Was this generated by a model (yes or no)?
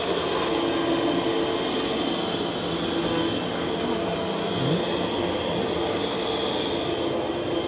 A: no